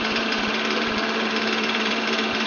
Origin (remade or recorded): remade